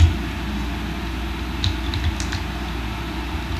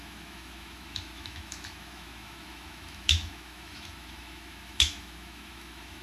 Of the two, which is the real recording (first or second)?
first